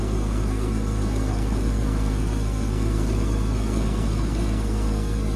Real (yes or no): no